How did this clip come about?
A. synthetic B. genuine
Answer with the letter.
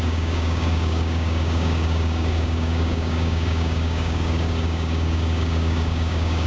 A